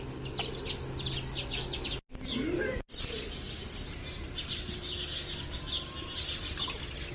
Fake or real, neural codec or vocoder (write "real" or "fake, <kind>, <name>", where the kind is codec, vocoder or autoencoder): real